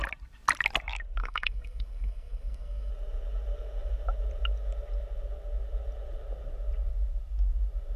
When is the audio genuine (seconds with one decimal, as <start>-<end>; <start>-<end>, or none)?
0.0-1.2; 2.9-8.0